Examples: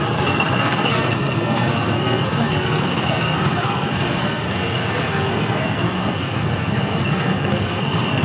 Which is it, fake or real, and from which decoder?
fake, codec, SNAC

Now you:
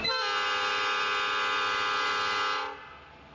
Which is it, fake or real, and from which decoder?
real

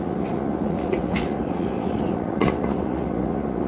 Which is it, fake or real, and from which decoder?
fake, vocoder, Vocos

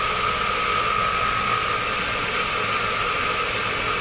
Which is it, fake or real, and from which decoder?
real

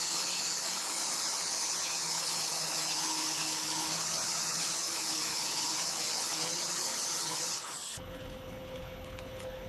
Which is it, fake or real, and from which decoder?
fake, codec, HILCodec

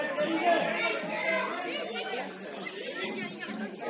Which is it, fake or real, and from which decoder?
real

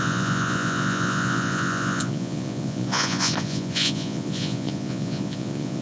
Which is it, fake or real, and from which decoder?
fake, vocoder, Vocos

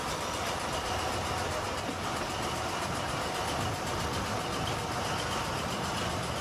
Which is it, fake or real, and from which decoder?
real